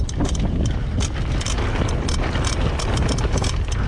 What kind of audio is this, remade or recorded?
recorded